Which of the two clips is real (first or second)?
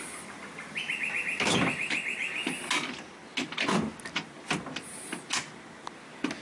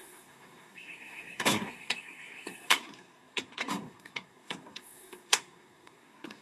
first